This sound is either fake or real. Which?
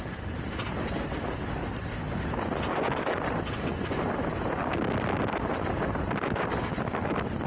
real